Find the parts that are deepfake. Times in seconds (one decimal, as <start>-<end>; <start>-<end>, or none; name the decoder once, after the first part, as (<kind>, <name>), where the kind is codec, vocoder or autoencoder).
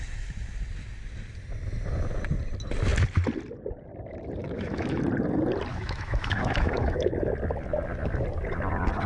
4.4-5.0 (autoencoder, DAC-VAE); 5.7-7.1